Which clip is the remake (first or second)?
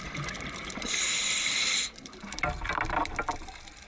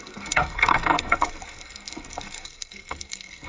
second